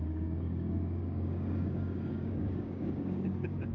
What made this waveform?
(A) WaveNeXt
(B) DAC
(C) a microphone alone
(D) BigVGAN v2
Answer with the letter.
B